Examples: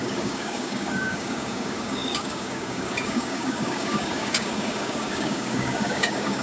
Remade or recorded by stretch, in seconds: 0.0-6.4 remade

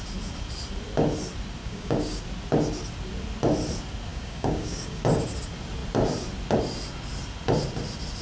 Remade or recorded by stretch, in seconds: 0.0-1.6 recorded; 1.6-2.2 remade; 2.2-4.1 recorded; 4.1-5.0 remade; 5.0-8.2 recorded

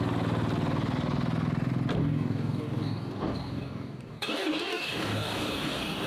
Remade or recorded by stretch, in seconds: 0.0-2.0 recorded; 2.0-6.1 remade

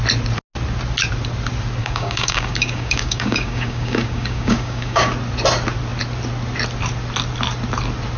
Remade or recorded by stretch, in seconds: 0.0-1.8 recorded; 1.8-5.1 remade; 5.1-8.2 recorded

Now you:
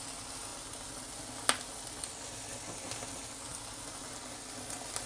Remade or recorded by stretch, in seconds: 0.0-5.1 recorded